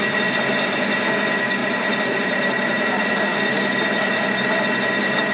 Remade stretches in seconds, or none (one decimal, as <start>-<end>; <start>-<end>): 1.6-3.2